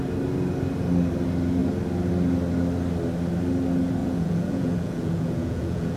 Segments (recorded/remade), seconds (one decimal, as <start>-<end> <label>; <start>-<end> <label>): 0.0-4.0 recorded; 4.0-6.0 remade